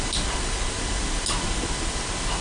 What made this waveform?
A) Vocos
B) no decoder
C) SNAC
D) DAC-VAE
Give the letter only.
B